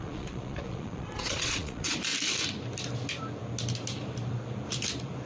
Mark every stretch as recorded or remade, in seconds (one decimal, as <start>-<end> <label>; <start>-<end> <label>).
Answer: 0.0-2.1 remade; 2.1-5.3 recorded